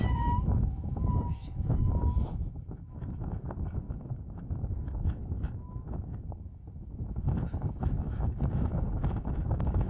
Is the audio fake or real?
fake